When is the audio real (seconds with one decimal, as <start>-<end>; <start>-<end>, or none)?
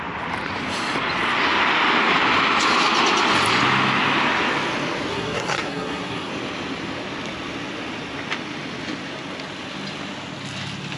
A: 0.0-5.1; 6.3-11.0